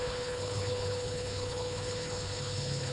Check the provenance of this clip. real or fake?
fake